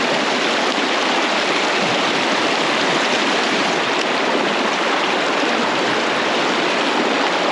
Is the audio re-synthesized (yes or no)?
no